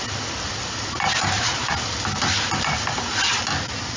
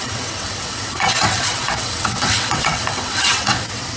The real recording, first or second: first